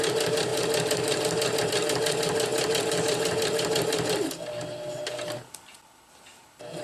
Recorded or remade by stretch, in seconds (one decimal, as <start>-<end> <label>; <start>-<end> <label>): 0.0-6.8 recorded